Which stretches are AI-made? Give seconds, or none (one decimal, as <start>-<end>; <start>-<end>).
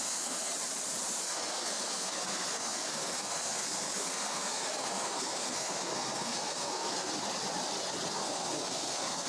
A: 0.0-0.5; 1.2-7.1; 8.1-9.3